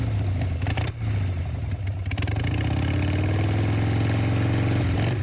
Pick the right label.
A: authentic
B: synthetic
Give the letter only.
A